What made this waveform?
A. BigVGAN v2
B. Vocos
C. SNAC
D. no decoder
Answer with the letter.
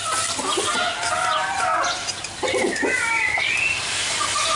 D